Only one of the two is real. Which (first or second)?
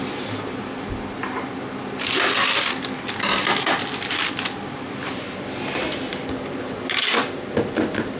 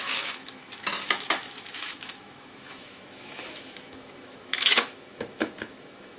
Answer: first